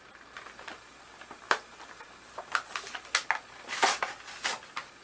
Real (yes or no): yes